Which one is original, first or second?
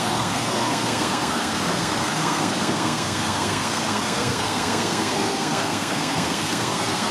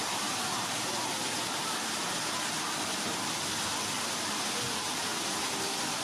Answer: second